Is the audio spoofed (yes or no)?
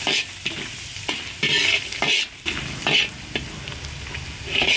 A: no